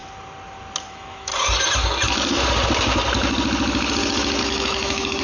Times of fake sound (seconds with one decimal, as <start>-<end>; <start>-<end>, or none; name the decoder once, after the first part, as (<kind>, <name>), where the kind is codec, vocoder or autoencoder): 0.9-1.3 (autoencoder, DAC-VAE); 4.4-5.2